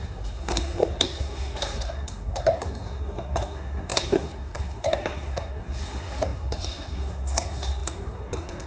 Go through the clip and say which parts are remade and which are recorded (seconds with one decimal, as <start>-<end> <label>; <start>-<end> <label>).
0.0-8.7 remade